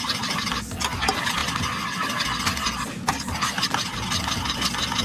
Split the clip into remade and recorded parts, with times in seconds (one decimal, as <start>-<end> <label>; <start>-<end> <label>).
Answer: 0.0-5.0 recorded